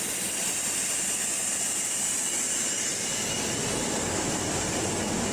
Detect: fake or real fake